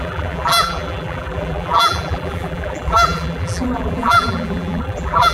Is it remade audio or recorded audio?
remade